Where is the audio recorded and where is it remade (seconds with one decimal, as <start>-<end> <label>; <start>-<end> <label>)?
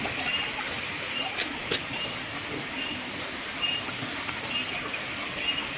0.0-5.8 recorded